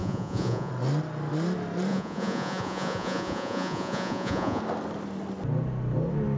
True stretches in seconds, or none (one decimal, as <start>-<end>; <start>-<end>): 0.7-1.9; 4.6-6.4